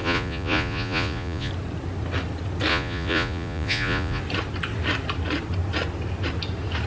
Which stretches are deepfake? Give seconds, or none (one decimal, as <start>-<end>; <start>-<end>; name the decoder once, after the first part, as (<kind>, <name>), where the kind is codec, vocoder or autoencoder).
0.0-1.5 (vocoder, Vocos); 2.7-4.2